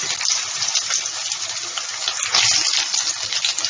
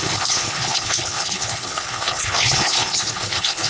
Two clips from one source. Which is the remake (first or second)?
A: second